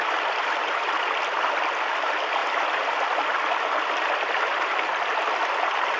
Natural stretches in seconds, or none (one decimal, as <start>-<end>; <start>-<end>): 0.0-6.0